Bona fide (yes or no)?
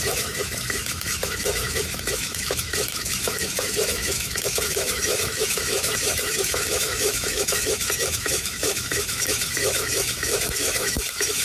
no